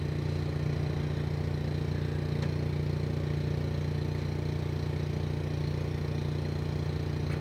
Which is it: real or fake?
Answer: real